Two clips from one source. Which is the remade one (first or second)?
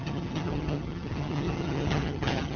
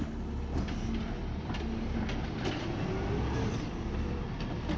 first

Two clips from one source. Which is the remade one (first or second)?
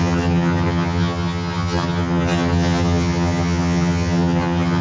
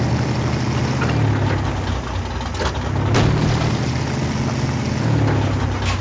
first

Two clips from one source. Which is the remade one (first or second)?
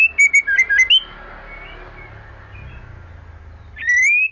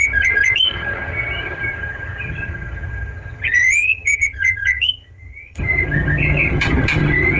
second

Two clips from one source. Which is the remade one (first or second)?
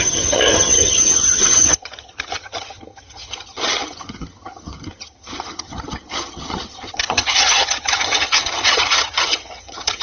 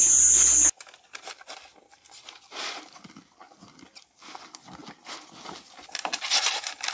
first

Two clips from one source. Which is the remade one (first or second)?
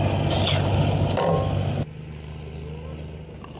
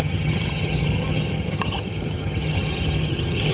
second